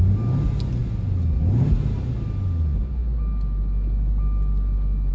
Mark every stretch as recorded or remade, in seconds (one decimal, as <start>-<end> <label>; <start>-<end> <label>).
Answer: 0.0-5.1 recorded